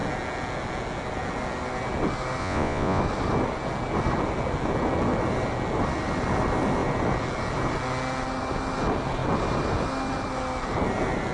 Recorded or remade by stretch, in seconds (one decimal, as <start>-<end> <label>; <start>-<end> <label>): 0.0-2.4 recorded; 2.4-3.0 remade; 3.0-11.3 recorded